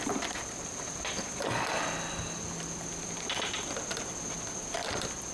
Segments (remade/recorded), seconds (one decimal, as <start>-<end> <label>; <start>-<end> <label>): 0.0-5.3 recorded